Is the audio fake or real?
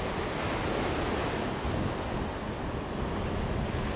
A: real